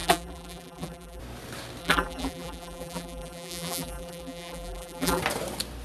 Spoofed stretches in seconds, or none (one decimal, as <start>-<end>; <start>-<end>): 0.0-1.2; 1.8-5.2